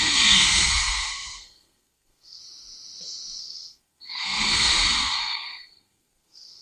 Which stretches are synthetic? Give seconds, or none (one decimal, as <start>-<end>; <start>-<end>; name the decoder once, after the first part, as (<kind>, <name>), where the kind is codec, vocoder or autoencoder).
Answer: 0.0-2.4 (codec, SNAC); 3.4-4.7; 5.2-6.6